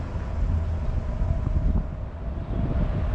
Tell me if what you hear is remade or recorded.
recorded